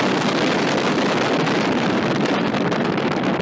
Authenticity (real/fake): real